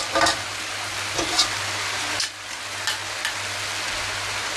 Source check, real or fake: real